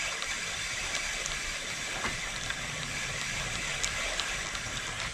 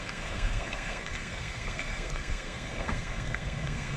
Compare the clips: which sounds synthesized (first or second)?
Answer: second